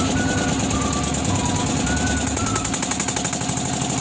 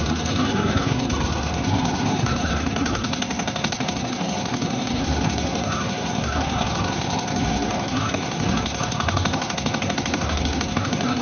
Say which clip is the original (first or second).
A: first